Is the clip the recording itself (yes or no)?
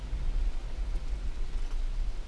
yes